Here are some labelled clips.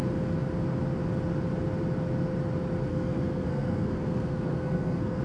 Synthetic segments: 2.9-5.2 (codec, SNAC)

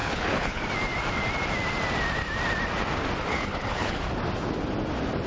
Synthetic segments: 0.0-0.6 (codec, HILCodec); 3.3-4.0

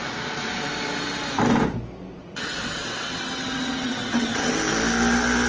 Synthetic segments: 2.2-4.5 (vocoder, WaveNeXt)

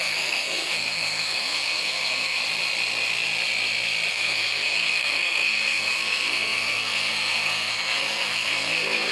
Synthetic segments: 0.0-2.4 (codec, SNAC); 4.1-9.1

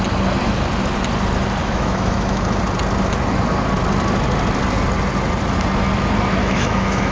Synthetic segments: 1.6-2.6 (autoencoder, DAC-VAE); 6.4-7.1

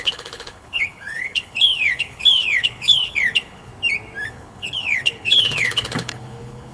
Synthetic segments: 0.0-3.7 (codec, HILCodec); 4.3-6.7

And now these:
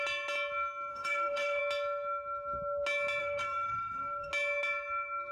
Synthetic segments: 0.9-1.6 (codec, SNAC); 3.2-4.3

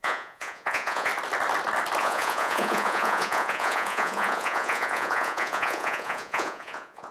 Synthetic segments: 0.0-1.1 (vocoder, Vocos); 2.0-7.1